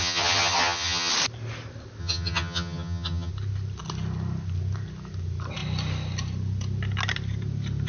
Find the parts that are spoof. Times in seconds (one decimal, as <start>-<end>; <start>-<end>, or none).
0.0-1.1; 2.0-3.3